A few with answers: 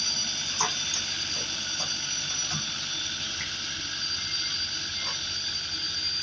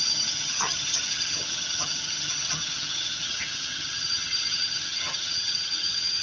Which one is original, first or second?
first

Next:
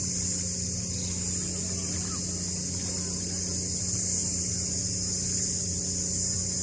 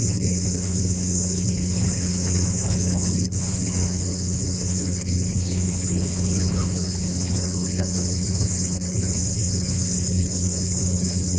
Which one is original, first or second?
first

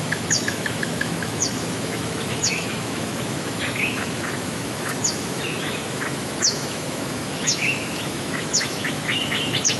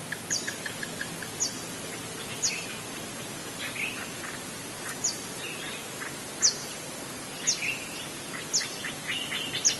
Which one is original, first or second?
second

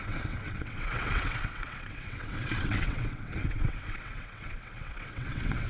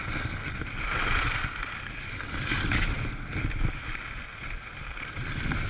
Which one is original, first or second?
second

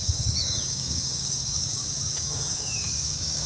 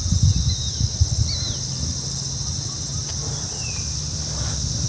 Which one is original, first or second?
second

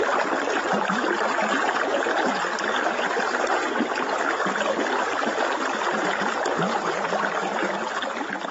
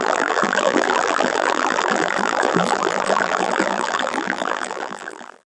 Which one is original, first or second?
first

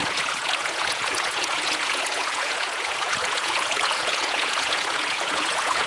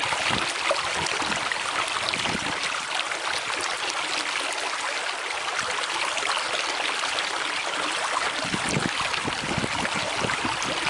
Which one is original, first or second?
second